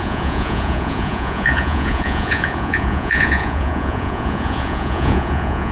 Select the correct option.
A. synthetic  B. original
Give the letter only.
A